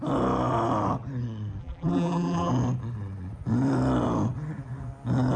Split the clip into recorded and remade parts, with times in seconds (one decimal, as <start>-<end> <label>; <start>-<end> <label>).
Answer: 0.0-1.6 recorded; 1.6-2.5 remade; 2.5-5.4 recorded